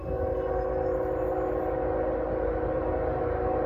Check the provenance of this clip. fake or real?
real